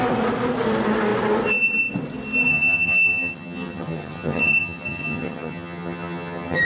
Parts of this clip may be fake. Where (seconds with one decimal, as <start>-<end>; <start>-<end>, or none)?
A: 2.5-6.6

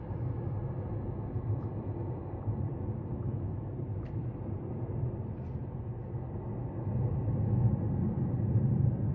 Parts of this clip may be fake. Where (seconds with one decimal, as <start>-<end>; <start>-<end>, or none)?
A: 3.7-4.6

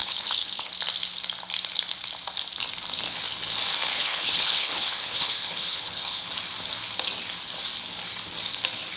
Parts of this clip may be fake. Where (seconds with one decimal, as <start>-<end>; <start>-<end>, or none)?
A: 0.0-0.7; 3.9-6.3

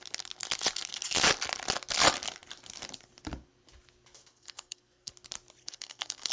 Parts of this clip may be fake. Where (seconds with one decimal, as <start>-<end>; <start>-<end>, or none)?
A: 4.2-5.1; 5.6-6.3

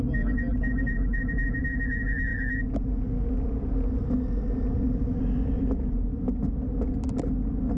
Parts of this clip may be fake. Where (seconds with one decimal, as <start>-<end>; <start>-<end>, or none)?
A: none

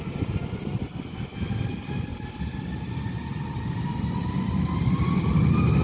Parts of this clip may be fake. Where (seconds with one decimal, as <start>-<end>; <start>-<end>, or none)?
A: 2.1-5.8